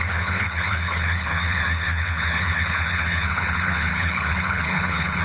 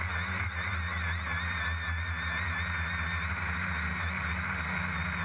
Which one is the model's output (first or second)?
first